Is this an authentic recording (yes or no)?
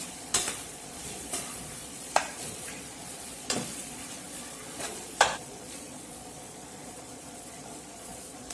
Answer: no